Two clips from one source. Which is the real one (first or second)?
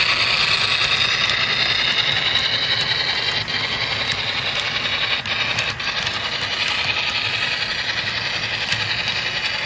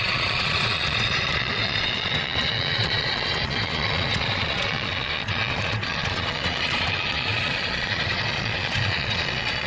first